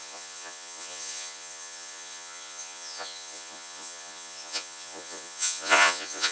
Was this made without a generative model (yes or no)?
no